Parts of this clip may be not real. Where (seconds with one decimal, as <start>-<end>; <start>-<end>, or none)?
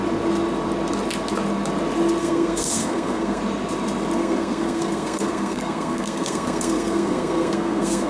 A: 2.2-3.4; 4.2-8.1